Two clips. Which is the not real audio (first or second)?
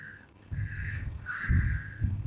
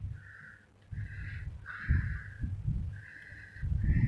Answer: first